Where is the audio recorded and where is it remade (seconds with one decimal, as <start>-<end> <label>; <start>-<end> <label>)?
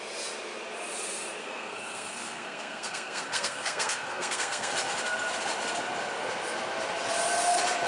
0.0-1.4 recorded; 1.4-4.7 remade; 4.7-7.9 recorded